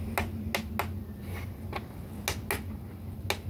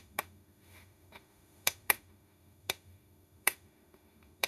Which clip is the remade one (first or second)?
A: second